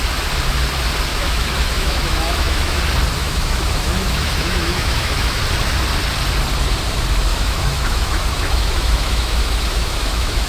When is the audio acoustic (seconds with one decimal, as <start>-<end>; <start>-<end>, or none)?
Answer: 0.0-1.1; 2.8-3.2; 5.4-7.3